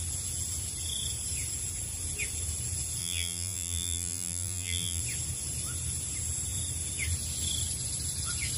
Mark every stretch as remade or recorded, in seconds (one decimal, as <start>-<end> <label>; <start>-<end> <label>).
0.0-3.0 recorded; 3.0-5.0 remade; 5.0-8.6 recorded